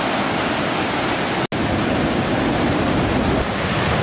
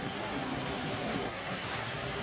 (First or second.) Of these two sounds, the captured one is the first